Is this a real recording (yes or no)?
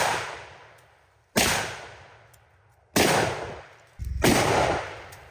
yes